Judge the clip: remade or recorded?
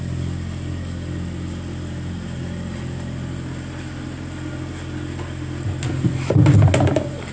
recorded